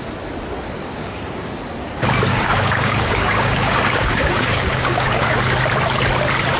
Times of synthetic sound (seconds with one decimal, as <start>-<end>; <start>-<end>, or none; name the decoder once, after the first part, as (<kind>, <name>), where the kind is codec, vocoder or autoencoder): 0.9-1.6 (codec, DAC); 2.3-5.4